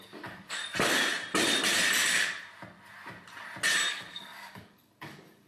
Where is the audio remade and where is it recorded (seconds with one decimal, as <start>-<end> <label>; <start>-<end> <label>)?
0.0-0.6 remade; 0.6-3.9 recorded; 3.9-5.5 remade